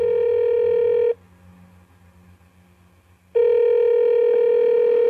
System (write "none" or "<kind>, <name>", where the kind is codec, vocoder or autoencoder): none